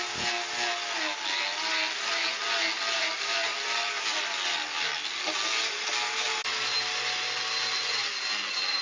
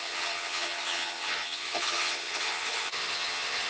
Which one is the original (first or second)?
first